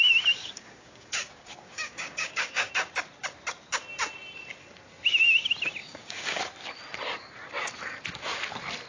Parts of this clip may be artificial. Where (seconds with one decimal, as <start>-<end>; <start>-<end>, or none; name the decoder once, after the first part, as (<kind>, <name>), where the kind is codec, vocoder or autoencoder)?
0.4-2.7 (codec, DAC); 5.8-6.4